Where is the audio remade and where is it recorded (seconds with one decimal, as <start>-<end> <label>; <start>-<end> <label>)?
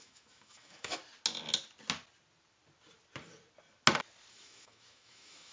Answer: 0.0-1.0 remade; 1.0-4.3 recorded; 4.3-5.5 remade